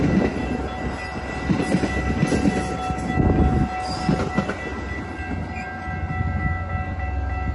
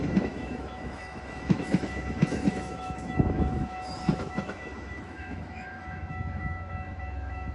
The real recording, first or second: first